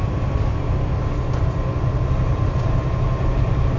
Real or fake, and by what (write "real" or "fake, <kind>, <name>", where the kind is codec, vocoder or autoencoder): real